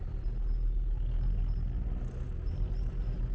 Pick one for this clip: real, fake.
real